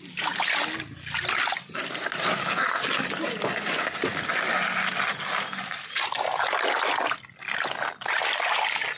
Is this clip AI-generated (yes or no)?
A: no